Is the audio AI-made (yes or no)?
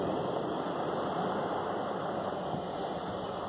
no